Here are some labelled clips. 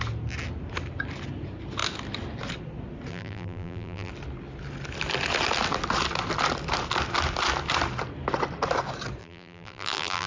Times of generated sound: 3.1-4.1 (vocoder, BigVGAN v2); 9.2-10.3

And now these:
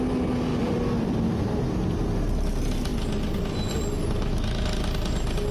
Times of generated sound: 0.5-1.5 (vocoder, BigVGAN v2); 2.9-3.5